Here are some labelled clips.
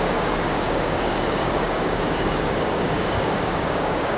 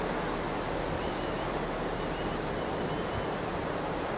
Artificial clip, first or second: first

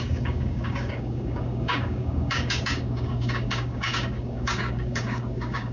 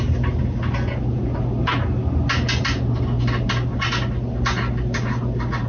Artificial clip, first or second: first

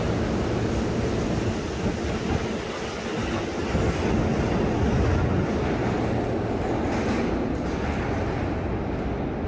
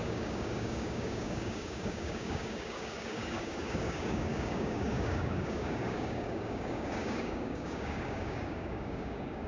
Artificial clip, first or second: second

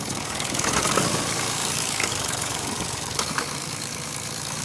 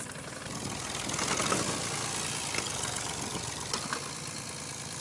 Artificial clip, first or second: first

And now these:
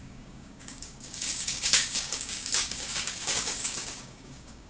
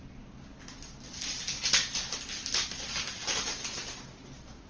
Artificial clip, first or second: first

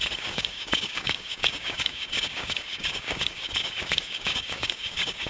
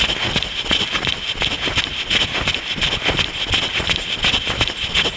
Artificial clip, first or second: first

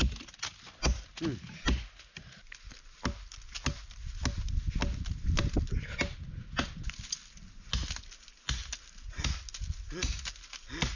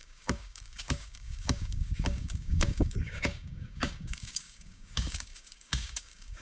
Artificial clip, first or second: second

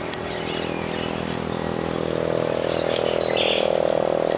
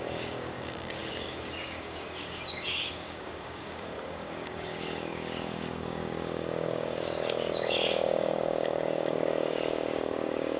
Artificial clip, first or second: second